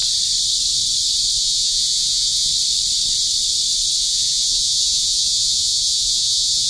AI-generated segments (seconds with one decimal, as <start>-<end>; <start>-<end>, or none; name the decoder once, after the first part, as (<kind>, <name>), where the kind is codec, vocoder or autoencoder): 1.4-2.5 (vocoder, Vocos); 4.0-6.7